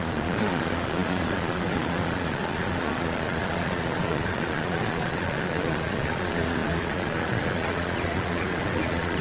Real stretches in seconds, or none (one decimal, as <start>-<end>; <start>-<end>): none